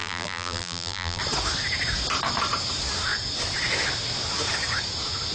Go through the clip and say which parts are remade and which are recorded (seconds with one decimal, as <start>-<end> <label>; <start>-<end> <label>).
0.0-1.2 remade; 1.2-5.3 recorded